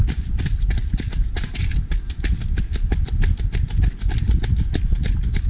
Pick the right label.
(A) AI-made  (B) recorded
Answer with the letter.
B